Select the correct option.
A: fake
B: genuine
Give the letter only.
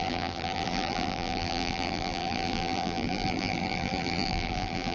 A